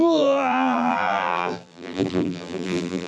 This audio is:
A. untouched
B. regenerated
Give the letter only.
B